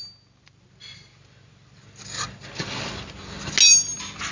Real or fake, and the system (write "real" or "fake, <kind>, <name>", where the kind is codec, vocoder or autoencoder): real